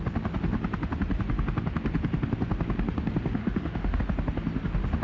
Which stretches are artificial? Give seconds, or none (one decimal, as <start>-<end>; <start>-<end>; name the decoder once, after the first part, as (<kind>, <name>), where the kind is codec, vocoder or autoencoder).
3.4-4.0 (autoencoder, DAC-VAE)